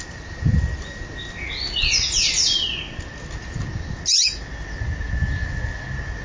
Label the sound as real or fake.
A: real